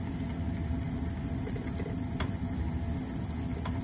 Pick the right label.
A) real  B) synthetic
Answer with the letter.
A